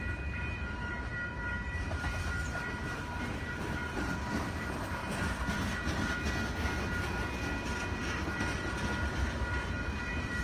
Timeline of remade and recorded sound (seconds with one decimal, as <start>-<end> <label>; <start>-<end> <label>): 0.0-5.0 remade; 5.0-10.0 recorded; 10.0-10.4 remade